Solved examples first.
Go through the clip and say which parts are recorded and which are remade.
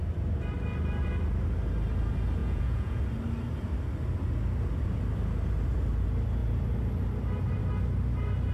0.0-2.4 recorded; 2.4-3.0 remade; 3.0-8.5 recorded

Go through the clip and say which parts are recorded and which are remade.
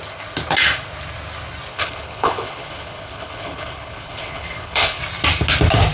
0.0-1.7 recorded; 1.7-5.0 remade; 5.0-5.9 recorded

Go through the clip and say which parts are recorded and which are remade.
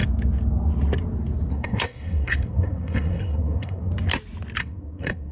0.0-1.5 recorded; 1.5-3.9 remade; 3.9-4.6 recorded; 4.6-5.3 remade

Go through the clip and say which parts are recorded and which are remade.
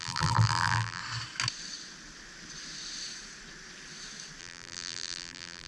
0.0-1.0 remade; 1.0-4.4 recorded; 4.4-5.7 remade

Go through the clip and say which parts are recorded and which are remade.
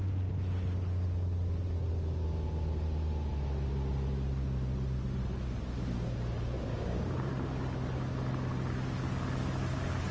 0.0-6.7 recorded; 6.7-7.3 remade; 7.3-10.1 recorded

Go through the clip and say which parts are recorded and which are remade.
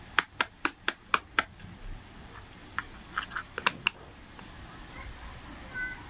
0.0-2.6 recorded; 2.6-3.6 remade; 3.6-6.1 recorded